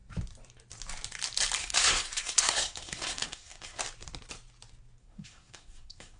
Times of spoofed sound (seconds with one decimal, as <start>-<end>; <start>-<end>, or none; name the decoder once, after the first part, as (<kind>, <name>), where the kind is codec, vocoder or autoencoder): 1.6-3.8 (codec, SNAC); 5.0-6.2